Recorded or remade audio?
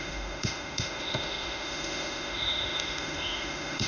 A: remade